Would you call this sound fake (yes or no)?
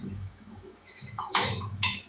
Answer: yes